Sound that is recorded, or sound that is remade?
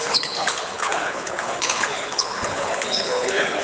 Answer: remade